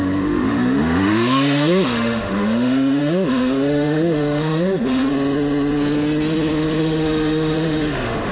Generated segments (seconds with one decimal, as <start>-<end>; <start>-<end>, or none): 0.0-5.1; 6.8-8.3